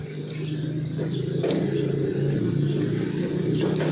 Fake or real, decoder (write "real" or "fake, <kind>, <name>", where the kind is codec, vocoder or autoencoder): real